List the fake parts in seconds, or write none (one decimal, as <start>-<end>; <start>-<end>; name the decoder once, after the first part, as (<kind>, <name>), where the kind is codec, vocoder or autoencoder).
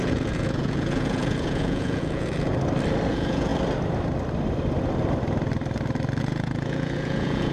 0.0-2.5 (vocoder, Vocos); 3.1-3.5; 6.2-7.5